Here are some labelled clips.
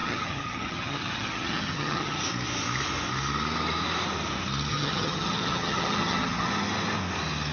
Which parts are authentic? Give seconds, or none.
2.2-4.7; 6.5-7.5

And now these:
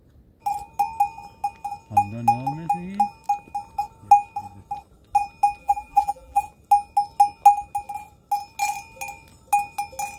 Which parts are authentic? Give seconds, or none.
0.0-5.6; 6.4-10.2

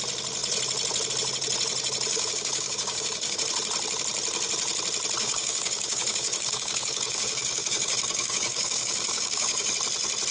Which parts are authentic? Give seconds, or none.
0.0-2.1; 3.4-5.2; 9.7-10.3